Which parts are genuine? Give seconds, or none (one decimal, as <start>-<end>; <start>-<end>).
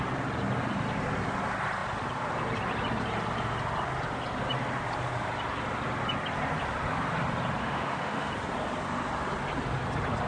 0.0-7.6; 8.3-10.3